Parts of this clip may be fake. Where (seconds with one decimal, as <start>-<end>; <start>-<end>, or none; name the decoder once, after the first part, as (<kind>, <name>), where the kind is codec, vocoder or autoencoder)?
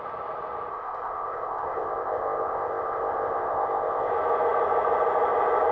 0.7-4.1 (codec, ZipCodec)